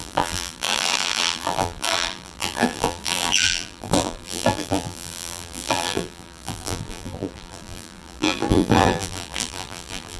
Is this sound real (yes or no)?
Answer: no